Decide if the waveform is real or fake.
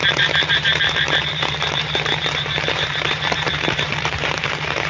fake